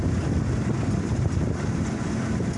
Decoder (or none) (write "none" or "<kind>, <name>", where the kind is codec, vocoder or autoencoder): none